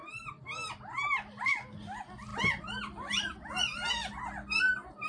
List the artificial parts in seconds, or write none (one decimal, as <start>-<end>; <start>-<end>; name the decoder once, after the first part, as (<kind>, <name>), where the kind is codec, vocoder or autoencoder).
0.0-0.7 (vocoder, BigVGAN v2); 2.3-3.9